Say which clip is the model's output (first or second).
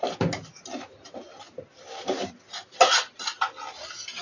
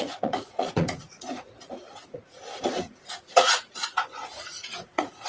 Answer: second